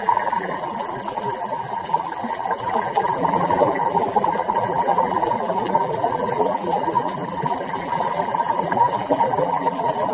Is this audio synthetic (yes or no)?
yes